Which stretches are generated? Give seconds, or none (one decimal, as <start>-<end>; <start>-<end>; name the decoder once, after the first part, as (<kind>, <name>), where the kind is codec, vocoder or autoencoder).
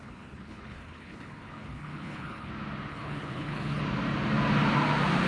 0.0-2.5 (codec, HILCodec); 2.9-3.8